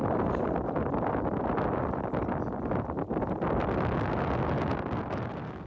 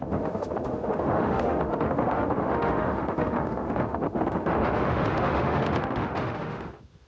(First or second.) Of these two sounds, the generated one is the second